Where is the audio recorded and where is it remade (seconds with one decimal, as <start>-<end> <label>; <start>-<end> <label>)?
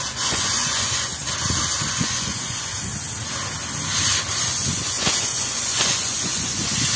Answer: 0.0-1.2 remade; 1.2-1.9 recorded; 1.9-2.9 remade; 2.9-4.4 recorded; 4.4-7.0 remade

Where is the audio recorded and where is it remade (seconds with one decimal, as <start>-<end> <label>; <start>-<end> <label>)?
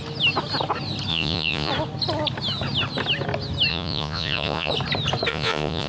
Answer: 0.0-1.1 recorded; 1.1-1.7 remade; 1.7-3.7 recorded; 3.7-4.7 remade; 4.7-5.3 recorded; 5.3-5.9 remade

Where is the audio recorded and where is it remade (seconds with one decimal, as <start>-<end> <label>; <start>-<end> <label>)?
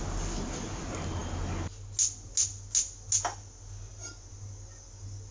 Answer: 0.0-5.3 recorded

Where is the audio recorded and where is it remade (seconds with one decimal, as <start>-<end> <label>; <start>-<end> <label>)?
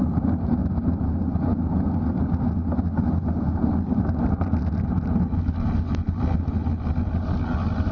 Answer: 0.0-7.9 recorded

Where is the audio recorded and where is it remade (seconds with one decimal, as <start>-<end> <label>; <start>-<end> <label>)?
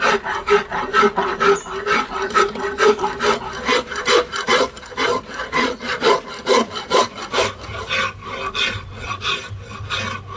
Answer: 0.0-5.4 recorded; 5.4-6.0 remade; 6.0-8.9 recorded; 8.9-9.4 remade; 9.4-10.4 recorded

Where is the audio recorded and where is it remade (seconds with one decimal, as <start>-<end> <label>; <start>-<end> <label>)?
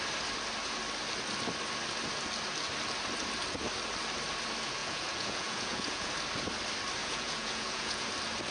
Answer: 0.0-4.8 recorded; 4.8-6.1 remade; 6.1-7.0 recorded; 7.0-8.1 remade; 8.1-8.5 recorded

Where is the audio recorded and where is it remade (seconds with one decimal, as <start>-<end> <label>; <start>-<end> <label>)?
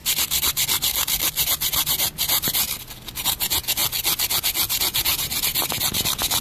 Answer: 0.0-3.2 recorded; 3.2-3.8 remade; 3.8-4.8 recorded; 4.8-5.3 remade; 5.3-6.4 recorded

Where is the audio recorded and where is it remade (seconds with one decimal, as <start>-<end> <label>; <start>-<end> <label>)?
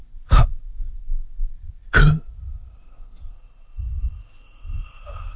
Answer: 0.0-5.4 recorded